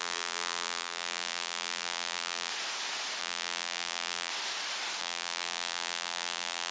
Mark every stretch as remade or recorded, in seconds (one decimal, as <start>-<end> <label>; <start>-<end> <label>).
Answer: 0.0-2.5 remade; 2.5-3.2 recorded; 3.2-4.3 remade; 4.3-5.0 recorded; 5.0-6.7 remade